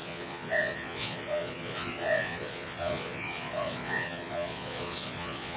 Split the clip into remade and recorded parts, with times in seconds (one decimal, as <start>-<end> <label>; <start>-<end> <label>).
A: 0.0-5.6 remade